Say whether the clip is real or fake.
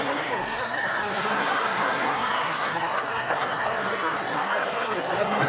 fake